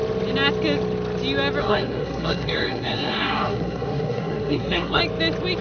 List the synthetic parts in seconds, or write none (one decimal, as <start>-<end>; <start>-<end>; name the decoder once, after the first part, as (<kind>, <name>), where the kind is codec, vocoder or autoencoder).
1.6-5.0 (codec, SNAC)